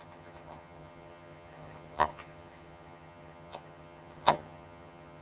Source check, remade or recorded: remade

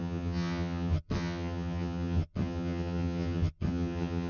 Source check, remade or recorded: remade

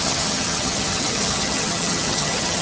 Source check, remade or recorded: remade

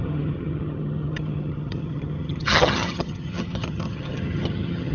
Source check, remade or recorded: remade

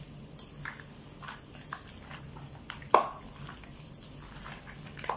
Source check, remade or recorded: recorded